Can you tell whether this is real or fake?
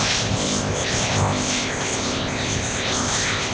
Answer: fake